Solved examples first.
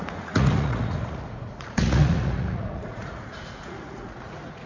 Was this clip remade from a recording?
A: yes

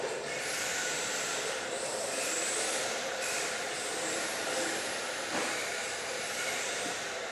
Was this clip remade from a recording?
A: yes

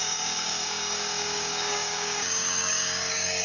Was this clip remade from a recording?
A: yes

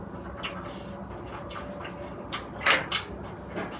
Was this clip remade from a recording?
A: no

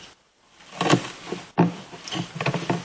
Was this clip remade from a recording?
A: no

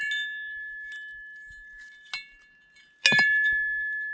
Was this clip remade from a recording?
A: no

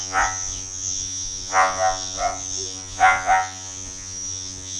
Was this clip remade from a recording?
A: yes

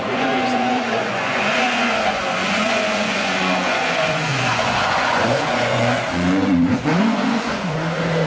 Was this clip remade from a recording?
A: yes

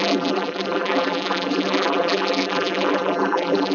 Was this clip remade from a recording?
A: yes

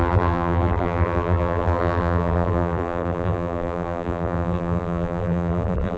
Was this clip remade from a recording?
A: yes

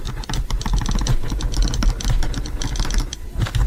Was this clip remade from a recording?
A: no